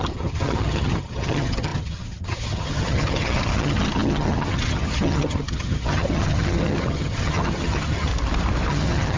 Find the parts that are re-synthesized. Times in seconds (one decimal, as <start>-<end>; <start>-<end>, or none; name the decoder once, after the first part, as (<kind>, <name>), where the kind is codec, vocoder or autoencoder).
0.0-8.1 (vocoder, HiFi-GAN); 8.7-9.2